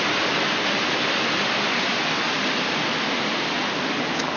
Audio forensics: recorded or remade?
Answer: recorded